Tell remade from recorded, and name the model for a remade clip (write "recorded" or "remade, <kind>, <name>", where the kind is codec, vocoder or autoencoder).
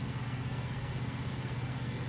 remade, codec, SNAC